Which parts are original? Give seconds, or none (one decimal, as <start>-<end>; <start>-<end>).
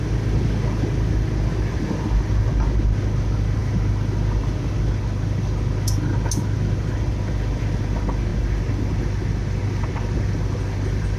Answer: 0.0-11.2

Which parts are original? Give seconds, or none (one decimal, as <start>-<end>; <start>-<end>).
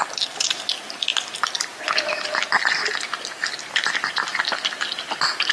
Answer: 0.0-5.5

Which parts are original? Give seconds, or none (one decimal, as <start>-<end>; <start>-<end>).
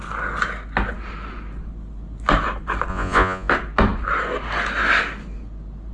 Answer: 0.0-2.9; 3.5-5.9